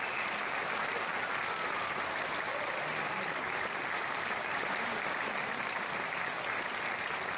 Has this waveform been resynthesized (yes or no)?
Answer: no